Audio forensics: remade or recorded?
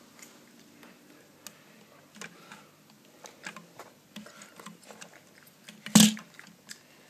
recorded